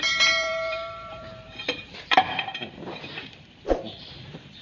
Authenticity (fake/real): fake